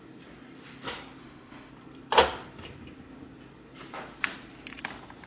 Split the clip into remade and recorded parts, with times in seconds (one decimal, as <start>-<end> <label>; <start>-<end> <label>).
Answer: 0.0-1.2 recorded; 1.2-1.7 remade; 1.7-5.3 recorded